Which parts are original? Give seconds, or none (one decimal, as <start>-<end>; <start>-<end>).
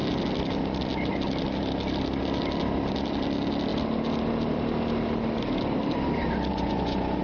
0.0-6.5